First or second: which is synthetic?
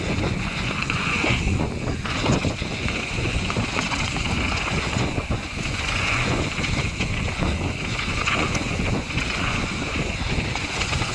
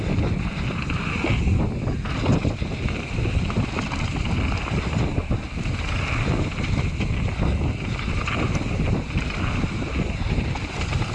first